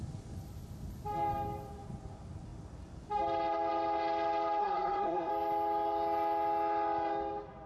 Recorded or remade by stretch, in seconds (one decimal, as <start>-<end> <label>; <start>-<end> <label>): 0.0-4.6 recorded; 4.6-5.3 remade; 5.3-7.7 recorded